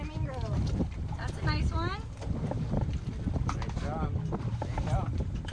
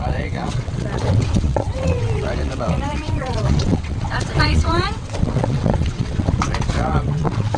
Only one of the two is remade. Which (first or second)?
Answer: second